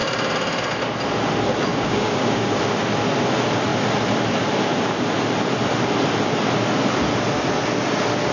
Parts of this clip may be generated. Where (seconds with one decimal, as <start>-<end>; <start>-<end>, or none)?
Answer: 1.7-2.6